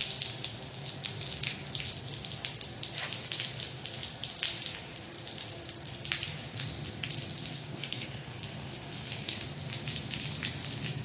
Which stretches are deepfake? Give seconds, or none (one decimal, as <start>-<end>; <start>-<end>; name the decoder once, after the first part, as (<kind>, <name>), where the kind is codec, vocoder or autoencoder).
7.5-9.4 (codec, SNAC)